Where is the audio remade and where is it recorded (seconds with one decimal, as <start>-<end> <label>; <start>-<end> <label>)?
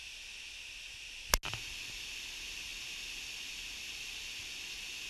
0.0-5.1 recorded